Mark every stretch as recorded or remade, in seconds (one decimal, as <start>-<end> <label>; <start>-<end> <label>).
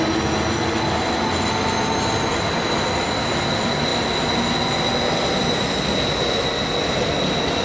0.0-7.6 recorded